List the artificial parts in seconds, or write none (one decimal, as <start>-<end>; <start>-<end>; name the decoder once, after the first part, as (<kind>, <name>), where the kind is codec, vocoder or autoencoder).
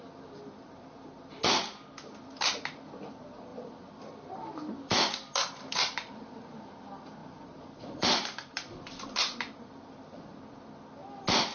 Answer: 3.5-6.3 (vocoder, BigVGAN v2); 7.2-10.4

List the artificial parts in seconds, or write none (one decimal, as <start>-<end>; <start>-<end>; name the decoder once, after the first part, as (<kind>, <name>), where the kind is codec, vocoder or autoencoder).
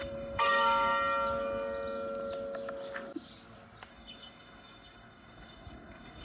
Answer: 0.0-0.9 (codec, DAC); 3.9-6.2